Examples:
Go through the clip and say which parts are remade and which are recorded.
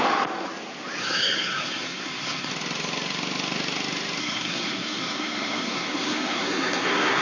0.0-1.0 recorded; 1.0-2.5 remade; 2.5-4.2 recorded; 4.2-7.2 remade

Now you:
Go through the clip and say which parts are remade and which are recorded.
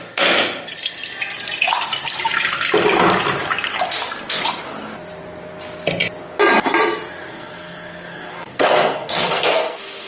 0.0-7.3 recorded; 7.3-10.1 remade